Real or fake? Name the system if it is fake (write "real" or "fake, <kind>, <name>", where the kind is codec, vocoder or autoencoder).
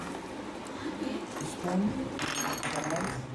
real